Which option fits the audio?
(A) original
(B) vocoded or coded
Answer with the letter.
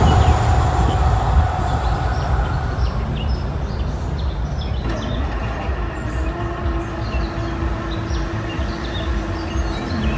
A